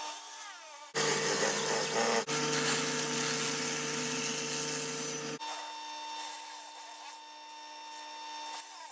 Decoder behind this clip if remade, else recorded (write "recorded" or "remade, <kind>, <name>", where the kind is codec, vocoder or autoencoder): recorded